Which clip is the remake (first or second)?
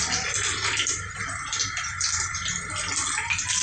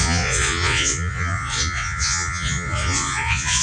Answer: second